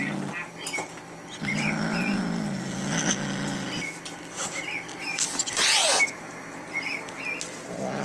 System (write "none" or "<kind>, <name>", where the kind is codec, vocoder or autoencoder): none